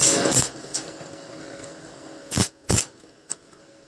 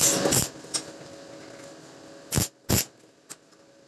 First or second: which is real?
second